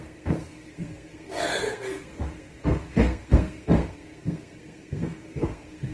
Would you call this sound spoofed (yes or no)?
yes